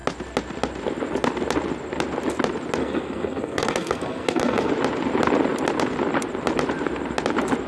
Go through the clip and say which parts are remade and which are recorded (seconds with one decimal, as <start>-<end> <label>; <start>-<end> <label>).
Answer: 0.0-2.8 recorded; 2.8-4.7 remade; 4.7-7.7 recorded